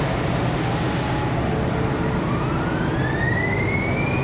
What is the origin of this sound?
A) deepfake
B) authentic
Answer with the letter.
B